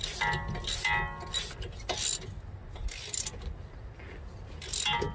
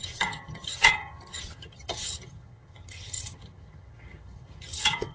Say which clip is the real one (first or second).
first